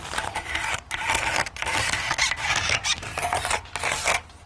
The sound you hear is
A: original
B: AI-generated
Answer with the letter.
A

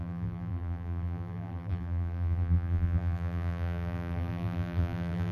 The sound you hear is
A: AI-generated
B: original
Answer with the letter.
A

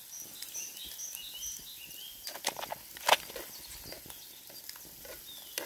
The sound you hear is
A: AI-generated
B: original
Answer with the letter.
B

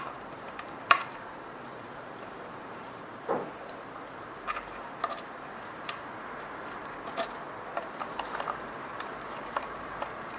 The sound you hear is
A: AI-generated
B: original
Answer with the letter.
A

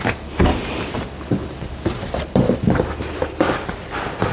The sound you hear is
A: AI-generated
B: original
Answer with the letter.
A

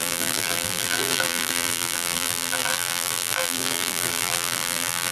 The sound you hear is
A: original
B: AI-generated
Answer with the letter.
B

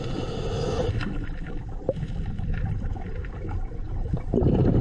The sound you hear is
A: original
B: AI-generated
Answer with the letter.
B